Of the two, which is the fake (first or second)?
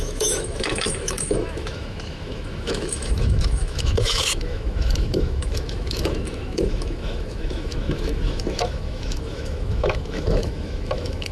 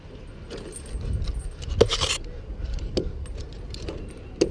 first